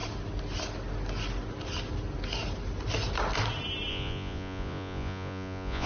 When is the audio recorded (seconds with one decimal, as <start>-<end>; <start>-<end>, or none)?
0.0-3.9